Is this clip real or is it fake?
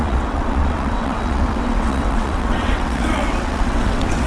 fake